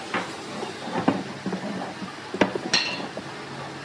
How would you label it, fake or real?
real